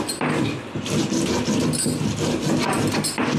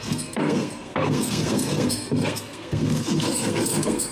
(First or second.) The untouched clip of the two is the first